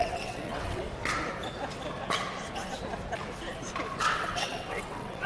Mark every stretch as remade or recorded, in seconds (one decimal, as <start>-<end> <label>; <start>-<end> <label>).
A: 0.0-0.8 remade; 0.8-4.0 recorded; 4.0-5.3 remade